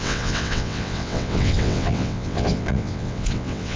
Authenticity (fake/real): fake